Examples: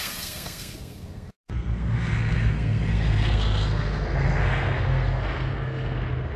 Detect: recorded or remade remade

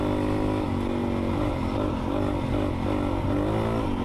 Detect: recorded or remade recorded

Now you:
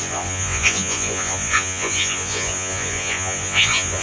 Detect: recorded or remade remade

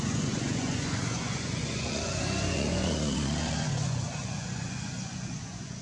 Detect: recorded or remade remade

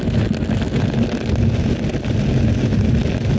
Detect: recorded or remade recorded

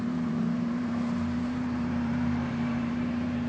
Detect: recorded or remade remade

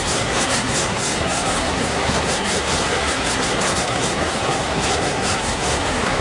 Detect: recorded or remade remade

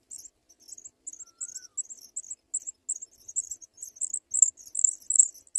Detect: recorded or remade recorded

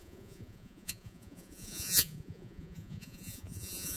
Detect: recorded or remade remade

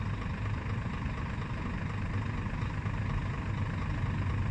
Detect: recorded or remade recorded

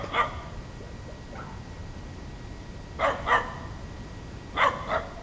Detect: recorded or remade recorded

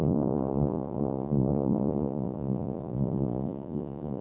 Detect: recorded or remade remade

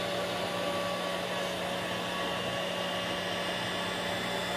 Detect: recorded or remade recorded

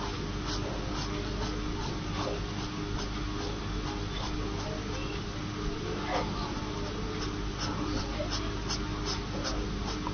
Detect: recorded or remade recorded